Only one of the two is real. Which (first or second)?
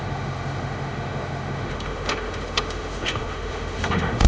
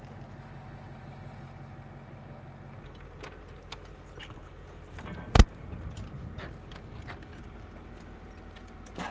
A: second